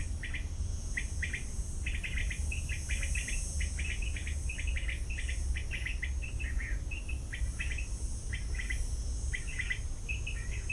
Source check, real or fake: real